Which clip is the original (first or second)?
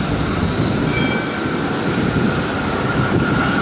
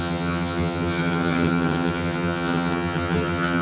first